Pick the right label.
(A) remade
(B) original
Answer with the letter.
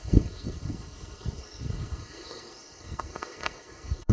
A